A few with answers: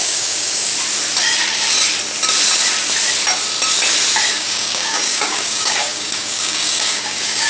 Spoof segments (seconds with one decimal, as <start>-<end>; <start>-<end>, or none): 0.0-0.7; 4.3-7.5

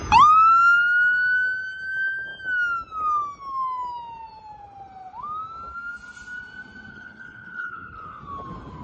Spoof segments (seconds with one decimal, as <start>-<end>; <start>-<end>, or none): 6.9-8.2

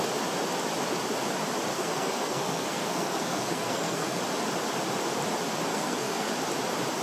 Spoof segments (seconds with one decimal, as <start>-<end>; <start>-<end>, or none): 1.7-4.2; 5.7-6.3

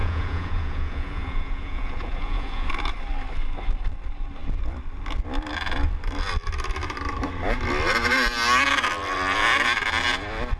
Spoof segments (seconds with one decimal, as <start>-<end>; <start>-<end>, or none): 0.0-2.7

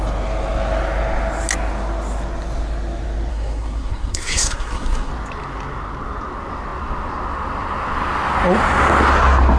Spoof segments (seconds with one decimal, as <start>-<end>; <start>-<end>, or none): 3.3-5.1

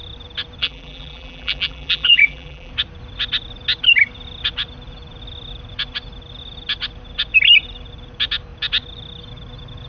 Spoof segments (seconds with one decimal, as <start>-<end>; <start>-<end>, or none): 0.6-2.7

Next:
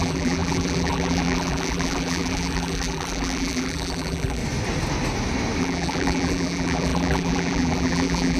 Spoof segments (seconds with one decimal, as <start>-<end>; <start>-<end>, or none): 0.0-4.4; 5.6-8.4